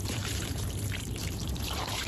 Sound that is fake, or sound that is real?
fake